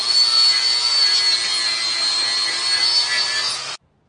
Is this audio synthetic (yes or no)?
no